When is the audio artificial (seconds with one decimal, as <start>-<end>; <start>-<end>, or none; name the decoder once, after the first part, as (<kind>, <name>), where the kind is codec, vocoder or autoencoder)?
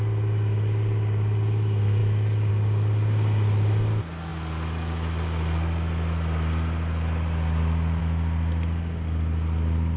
none